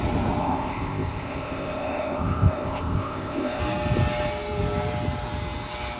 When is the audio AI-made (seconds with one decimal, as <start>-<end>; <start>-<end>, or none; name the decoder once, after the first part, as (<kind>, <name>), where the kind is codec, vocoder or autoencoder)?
0.4-3.6 (codec, ZipCodec)